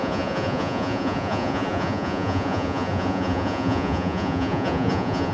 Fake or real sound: fake